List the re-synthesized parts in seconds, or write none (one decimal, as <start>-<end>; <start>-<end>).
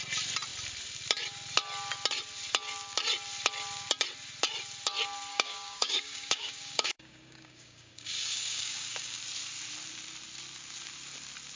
5.3-9.2